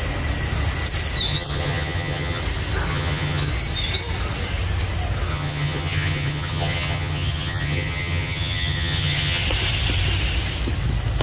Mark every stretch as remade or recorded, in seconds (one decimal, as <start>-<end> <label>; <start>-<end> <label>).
0.0-1.3 recorded; 1.3-2.4 remade; 2.4-2.9 recorded; 2.9-3.5 remade; 3.5-5.3 recorded; 5.3-9.4 remade; 9.4-11.2 recorded